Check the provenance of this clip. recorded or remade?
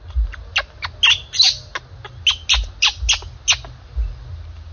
recorded